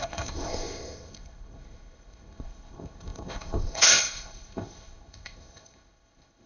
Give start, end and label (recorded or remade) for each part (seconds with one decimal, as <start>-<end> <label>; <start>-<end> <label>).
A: 0.0-6.5 remade